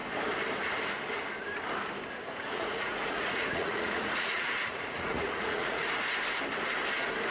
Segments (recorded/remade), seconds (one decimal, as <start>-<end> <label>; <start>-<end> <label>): 0.0-2.4 recorded; 2.4-5.8 remade; 5.8-7.3 recorded